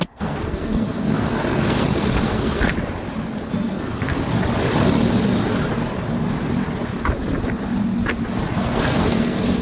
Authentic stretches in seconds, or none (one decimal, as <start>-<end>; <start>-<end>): 2.7-3.5; 4.1-8.5